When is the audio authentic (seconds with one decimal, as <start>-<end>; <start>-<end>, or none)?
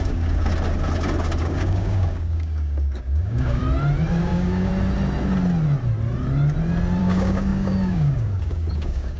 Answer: 0.5-1.4; 3.6-4.2; 4.7-7.0